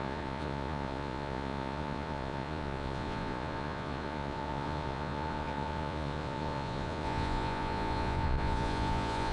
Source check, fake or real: fake